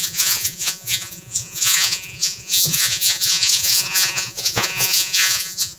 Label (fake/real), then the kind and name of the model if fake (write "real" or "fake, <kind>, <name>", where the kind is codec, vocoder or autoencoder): fake, vocoder, Vocos